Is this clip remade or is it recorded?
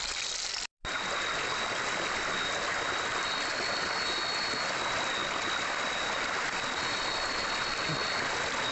recorded